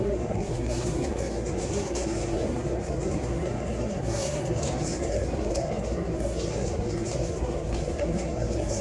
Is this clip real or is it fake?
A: fake